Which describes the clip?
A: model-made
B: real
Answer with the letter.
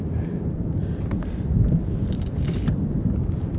A